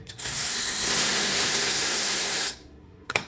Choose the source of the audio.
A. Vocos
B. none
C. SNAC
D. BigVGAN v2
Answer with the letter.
C